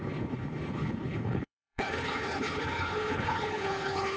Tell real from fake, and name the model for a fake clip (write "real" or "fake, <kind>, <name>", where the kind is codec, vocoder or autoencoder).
fake, codec, HILCodec